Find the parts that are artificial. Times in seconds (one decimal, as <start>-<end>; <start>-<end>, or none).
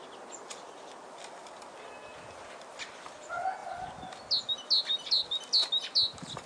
none